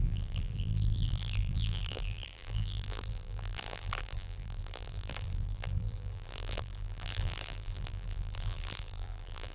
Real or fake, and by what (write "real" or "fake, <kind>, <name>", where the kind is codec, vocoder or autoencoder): fake, vocoder, BigVGAN v2